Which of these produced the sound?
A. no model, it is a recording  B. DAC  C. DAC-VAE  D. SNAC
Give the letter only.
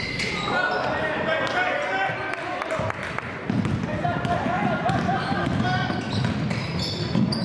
A